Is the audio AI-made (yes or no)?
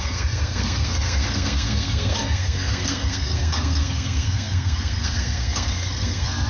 yes